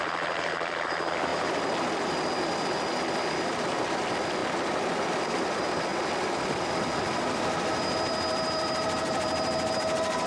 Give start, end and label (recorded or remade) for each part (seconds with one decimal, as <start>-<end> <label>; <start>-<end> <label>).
0.0-1.3 remade; 1.3-3.0 recorded; 3.0-10.3 remade